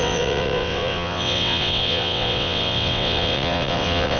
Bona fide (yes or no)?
no